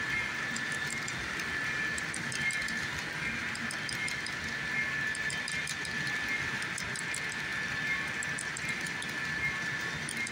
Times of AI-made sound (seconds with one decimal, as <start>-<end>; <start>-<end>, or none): none